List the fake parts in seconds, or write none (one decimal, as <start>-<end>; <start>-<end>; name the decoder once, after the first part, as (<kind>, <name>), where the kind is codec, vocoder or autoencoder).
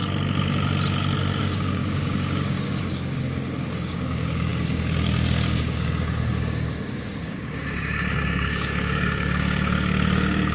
1.4-10.5 (codec, DAC)